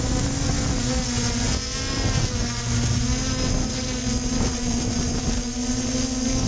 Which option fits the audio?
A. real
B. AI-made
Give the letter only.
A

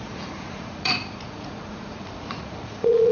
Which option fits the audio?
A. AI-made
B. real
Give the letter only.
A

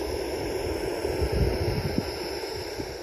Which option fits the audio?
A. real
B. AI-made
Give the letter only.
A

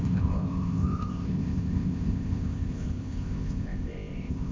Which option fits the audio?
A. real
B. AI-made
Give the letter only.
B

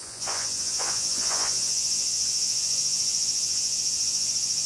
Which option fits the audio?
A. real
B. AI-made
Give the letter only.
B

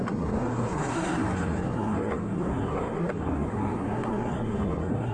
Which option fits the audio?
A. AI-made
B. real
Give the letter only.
A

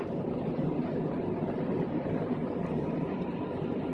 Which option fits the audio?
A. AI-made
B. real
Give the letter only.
B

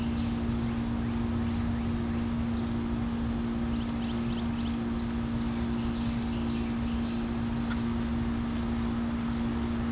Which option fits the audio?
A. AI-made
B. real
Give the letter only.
B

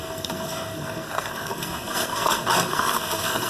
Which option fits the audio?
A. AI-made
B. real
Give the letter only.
A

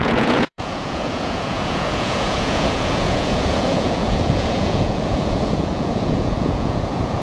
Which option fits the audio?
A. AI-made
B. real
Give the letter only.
A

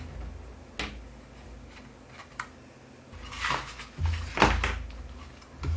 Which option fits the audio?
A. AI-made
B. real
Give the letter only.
B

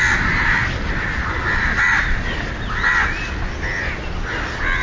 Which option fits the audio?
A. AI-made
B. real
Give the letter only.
B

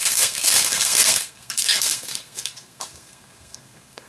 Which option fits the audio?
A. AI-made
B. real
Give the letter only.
A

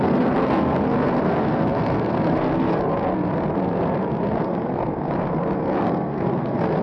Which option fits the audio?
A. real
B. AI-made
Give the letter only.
B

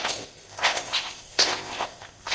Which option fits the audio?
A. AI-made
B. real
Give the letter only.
A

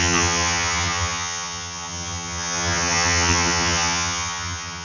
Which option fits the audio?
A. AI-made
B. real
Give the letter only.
A